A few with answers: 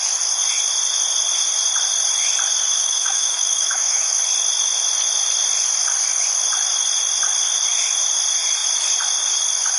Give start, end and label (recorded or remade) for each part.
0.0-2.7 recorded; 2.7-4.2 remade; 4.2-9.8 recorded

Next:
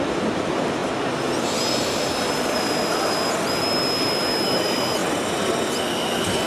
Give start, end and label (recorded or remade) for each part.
0.0-6.5 recorded